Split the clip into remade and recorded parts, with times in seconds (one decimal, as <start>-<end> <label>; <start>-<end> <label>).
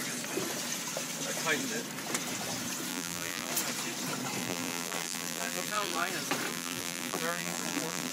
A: 0.0-2.9 recorded; 2.9-3.5 remade; 3.5-4.4 recorded; 4.4-6.1 remade; 6.1-6.5 recorded; 6.5-8.1 remade